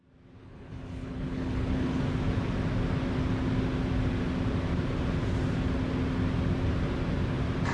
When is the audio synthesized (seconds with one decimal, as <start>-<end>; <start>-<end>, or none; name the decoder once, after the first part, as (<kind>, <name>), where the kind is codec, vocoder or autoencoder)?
0.4-2.0 (codec, HILCodec)